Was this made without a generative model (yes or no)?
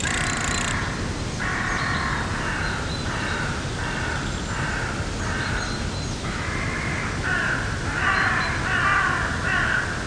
yes